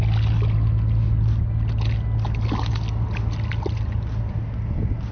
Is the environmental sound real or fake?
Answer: real